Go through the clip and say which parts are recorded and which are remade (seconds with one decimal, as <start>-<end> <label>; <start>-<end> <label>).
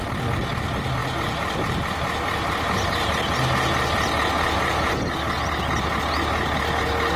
0.0-1.0 recorded; 1.0-3.1 remade; 3.1-7.2 recorded